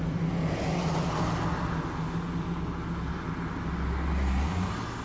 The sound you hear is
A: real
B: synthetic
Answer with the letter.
A